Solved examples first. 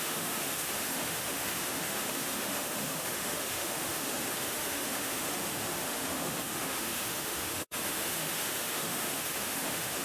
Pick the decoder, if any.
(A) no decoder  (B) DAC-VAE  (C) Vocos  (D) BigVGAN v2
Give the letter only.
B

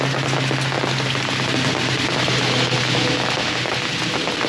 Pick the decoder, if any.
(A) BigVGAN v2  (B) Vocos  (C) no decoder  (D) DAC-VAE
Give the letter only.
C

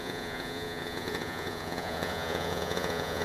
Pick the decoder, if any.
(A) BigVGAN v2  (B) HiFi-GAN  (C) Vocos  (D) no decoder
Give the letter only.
C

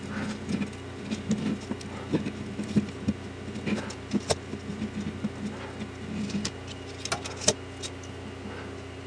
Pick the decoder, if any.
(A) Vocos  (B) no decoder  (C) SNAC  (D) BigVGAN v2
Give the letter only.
B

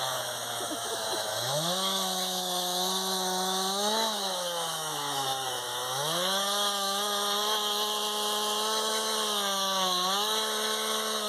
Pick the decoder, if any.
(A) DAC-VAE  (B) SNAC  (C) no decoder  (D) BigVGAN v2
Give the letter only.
A